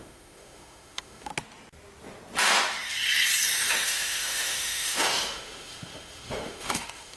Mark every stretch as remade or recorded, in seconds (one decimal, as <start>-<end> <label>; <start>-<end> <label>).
0.0-1.3 remade; 1.3-3.7 recorded; 3.7-7.2 remade